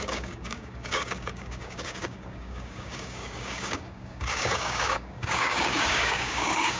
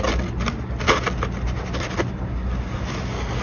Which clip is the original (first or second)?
second